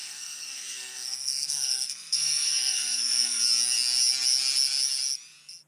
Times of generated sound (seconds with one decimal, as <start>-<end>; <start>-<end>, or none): 0.0-3.4